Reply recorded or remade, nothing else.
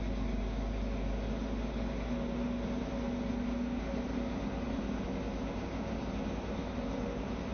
recorded